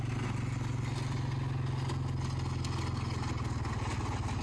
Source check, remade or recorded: recorded